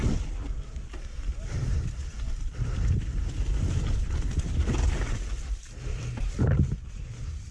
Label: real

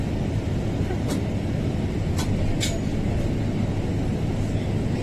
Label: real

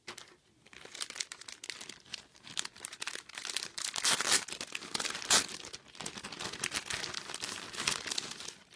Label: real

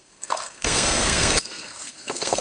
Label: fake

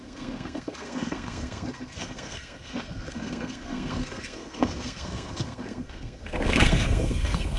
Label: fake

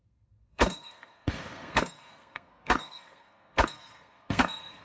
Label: fake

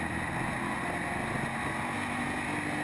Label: real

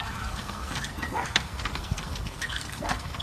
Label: fake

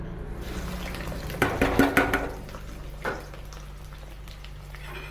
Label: real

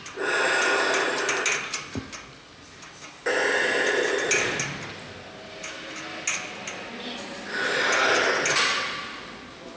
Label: real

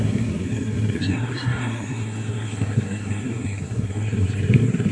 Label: fake